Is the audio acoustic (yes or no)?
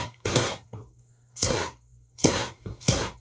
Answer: no